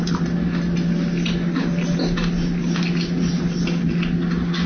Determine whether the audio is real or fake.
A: real